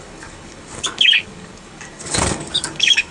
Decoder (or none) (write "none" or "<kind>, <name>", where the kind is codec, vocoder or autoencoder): codec, DAC